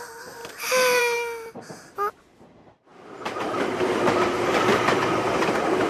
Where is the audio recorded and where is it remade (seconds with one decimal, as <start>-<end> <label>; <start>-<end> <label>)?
0.0-5.9 recorded